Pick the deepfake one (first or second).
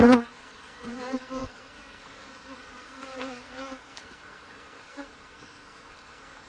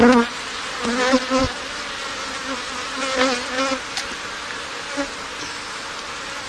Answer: first